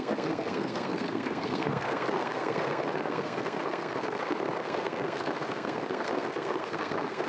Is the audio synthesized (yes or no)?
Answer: yes